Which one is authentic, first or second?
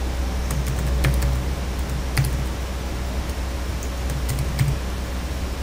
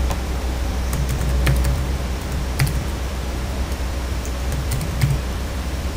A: first